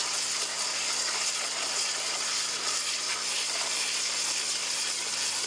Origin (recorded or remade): recorded